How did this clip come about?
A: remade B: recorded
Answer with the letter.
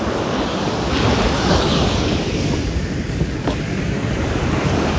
A